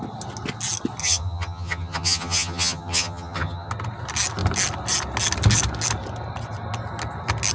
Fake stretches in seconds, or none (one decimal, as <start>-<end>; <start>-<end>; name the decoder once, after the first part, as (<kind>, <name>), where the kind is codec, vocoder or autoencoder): 1.0-3.7 (vocoder, HiFi-GAN)